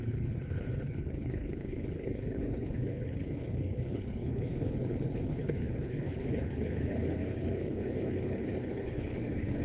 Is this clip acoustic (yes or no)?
no